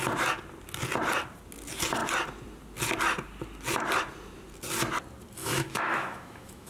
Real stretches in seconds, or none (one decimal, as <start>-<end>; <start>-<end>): 0.0-5.4